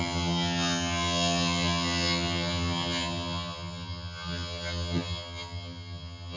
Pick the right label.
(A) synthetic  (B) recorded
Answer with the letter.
A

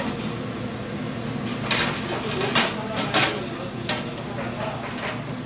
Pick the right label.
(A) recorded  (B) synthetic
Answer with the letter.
A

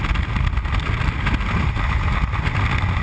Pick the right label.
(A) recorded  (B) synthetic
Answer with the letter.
A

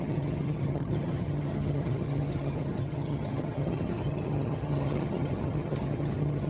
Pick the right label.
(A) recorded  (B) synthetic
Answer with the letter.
B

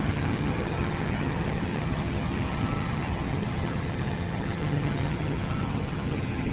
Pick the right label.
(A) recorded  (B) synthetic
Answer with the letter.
B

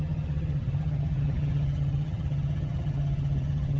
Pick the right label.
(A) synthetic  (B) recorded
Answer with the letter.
A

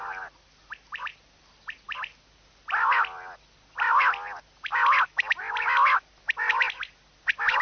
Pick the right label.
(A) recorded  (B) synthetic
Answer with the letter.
A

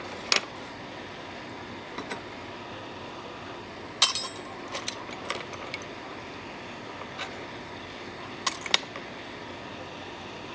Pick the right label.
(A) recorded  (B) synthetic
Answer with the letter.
A